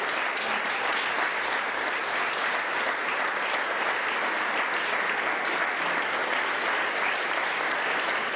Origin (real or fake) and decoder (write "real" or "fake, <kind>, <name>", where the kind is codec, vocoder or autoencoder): real